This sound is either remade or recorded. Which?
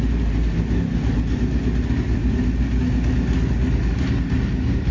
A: recorded